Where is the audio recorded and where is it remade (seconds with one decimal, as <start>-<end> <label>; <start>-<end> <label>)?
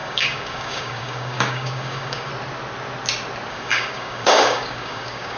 0.0-2.3 remade; 2.3-3.5 recorded; 3.5-5.4 remade